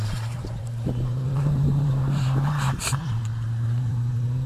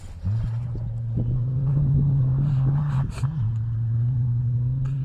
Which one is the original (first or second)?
second